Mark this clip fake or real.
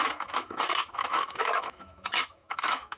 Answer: fake